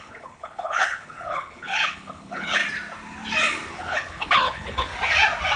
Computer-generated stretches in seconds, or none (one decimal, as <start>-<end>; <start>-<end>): 0.0-2.6; 3.7-4.9